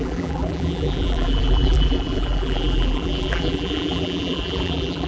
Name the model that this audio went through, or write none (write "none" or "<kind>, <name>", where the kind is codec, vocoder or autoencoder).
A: vocoder, BigVGAN v2